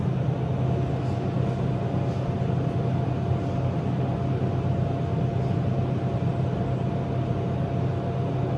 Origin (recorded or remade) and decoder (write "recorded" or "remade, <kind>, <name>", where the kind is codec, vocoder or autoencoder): recorded